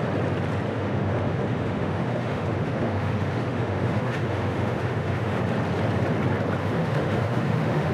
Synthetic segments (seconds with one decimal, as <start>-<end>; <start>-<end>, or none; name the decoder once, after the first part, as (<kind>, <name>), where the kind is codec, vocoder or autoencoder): 0.7-5.4 (autoencoder, DAC-VAE); 6.6-7.9